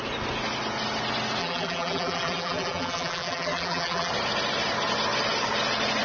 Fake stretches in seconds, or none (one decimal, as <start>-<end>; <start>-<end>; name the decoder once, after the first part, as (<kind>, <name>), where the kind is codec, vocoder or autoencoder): 1.4-4.1 (vocoder, BigVGAN v2)